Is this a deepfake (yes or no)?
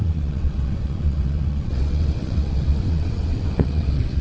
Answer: yes